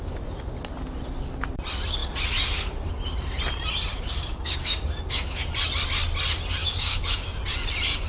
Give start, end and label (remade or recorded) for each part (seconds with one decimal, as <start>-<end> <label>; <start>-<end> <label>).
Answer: 0.0-3.9 recorded; 3.9-5.4 remade; 5.4-6.6 recorded; 6.6-7.4 remade; 7.4-8.1 recorded